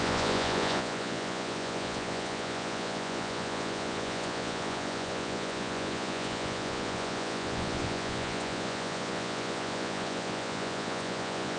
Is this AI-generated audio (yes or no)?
yes